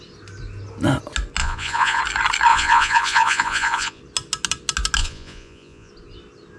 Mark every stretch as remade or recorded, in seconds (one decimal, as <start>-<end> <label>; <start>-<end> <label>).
0.0-1.4 recorded; 1.4-2.0 remade; 2.0-2.5 recorded; 2.5-4.0 remade; 4.0-5.0 recorded; 5.0-5.9 remade; 5.9-6.6 recorded